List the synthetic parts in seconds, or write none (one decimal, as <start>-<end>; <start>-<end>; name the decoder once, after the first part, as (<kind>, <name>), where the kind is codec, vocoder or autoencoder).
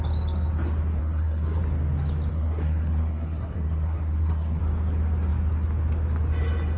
1.0-1.6 (codec, SNAC); 2.3-4.6